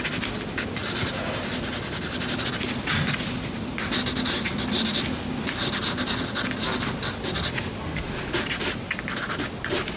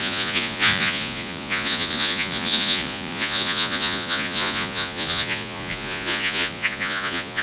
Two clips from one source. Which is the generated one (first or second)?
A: second